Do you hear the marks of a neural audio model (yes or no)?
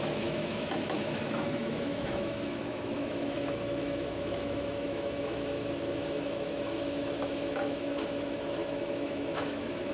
yes